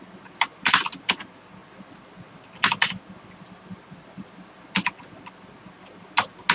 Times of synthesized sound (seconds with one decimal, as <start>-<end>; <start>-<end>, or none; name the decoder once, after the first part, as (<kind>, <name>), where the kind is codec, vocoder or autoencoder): none

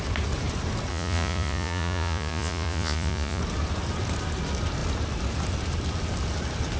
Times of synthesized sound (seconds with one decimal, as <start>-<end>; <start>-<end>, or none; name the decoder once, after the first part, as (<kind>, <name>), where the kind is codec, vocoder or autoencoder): 0.9-3.4 (vocoder, Vocos)

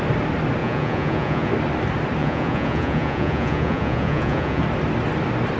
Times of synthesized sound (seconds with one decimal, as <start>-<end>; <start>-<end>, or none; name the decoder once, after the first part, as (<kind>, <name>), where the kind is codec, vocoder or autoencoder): 0.6-1.5 (vocoder, Vocos); 2.2-4.6

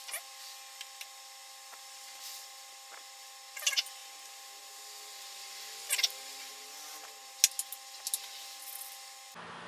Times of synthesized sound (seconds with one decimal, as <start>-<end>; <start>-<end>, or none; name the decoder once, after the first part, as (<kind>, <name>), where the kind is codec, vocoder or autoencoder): none

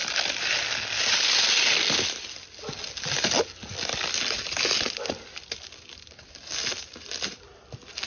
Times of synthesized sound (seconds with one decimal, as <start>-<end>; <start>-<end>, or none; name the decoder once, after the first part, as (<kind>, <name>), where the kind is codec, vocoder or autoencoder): none

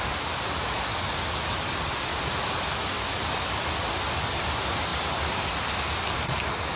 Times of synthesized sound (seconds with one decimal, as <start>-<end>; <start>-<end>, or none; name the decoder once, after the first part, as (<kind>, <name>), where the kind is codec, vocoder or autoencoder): none

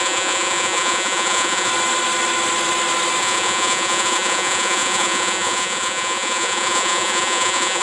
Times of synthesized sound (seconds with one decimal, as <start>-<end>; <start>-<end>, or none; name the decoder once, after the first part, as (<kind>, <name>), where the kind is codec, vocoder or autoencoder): 0.0-1.7 (vocoder, Vocos); 3.2-7.8

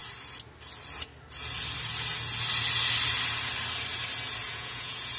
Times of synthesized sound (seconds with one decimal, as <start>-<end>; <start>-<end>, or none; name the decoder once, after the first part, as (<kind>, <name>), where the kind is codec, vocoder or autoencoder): 4.5-5.2 (vocoder, Vocos)